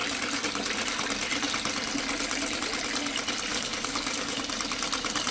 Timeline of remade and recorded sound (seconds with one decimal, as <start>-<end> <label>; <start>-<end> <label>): 0.0-3.5 recorded; 3.5-4.4 remade; 4.4-5.3 recorded

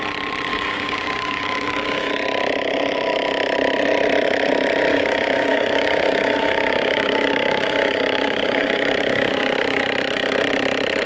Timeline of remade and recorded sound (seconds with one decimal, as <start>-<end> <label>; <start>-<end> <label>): 0.0-0.5 recorded; 0.5-2.1 remade; 2.1-4.9 recorded; 4.9-9.8 remade; 9.8-11.1 recorded

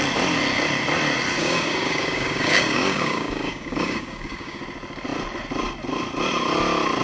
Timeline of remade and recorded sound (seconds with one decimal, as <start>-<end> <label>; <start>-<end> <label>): 0.0-1.4 recorded; 1.4-4.6 remade; 4.6-7.0 recorded

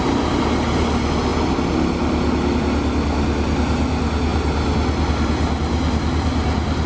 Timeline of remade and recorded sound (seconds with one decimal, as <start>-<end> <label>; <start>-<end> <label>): 0.0-6.9 recorded

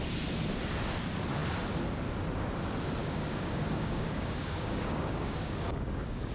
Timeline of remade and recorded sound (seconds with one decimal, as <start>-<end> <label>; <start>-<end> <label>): 0.0-3.0 recorded; 3.0-6.3 remade

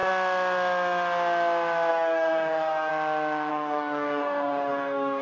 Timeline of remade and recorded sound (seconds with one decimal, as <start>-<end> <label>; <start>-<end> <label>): 0.0-1.9 recorded; 1.9-2.9 remade; 2.9-3.5 recorded; 3.5-5.2 remade

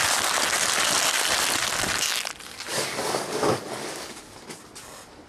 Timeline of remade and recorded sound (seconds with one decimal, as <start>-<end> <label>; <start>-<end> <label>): 0.0-2.7 recorded; 2.7-4.6 remade; 4.6-5.3 recorded